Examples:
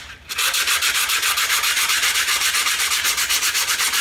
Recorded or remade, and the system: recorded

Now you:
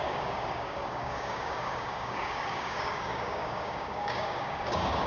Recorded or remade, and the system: remade, codec, DAC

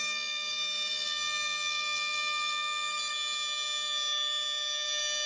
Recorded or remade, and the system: recorded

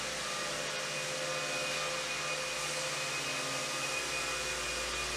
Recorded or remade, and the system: recorded